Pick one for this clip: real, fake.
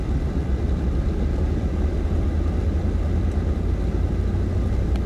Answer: real